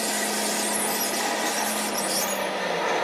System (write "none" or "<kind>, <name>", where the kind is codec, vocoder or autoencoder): none